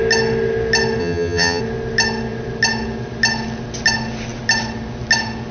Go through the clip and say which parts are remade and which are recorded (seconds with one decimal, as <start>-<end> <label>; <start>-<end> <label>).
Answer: 0.0-1.0 recorded; 1.0-1.6 remade; 1.6-5.5 recorded